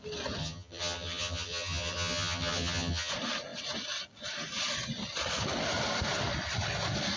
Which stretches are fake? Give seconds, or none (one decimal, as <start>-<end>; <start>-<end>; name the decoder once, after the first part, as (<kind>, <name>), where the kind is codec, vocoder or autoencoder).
0.4-3.1 (vocoder, HiFi-GAN)

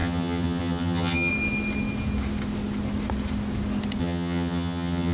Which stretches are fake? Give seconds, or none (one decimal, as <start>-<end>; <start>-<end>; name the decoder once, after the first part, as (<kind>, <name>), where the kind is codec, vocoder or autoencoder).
0.0-1.3 (vocoder, HiFi-GAN); 4.0-5.1